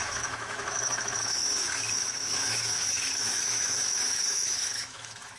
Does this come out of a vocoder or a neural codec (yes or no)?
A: yes